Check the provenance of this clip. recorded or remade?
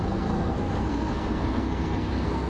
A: remade